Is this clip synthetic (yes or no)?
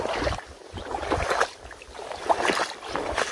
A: no